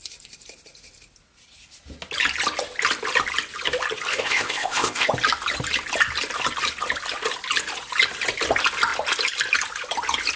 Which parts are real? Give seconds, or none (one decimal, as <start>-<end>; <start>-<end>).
0.0-4.1; 5.1-10.4